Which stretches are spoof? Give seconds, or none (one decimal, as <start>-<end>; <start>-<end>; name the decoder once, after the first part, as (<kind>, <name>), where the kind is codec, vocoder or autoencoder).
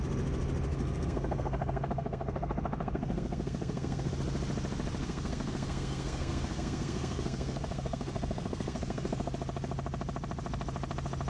0.7-4.1 (codec, SNAC); 5.0-9.3